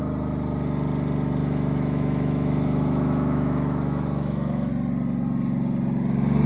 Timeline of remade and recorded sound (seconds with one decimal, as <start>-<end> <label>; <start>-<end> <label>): 0.0-1.4 recorded; 1.4-4.7 remade; 4.7-6.5 recorded